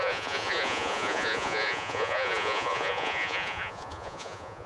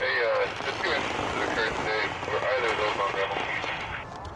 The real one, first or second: second